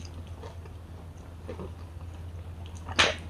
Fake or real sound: real